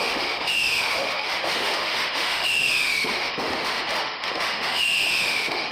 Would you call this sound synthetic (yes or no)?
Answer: yes